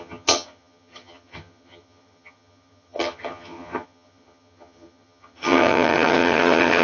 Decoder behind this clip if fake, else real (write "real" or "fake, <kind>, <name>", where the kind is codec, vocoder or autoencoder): fake, vocoder, HiFi-GAN